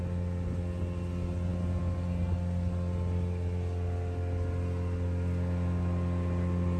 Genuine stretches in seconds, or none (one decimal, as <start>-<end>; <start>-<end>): 0.0-6.8